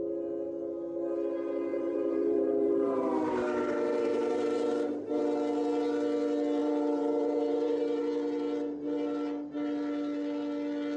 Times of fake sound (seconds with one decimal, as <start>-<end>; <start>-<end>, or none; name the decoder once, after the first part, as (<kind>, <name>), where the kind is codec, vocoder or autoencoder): 1.7-5.2 (vocoder, BigVGAN v2); 6.6-8.0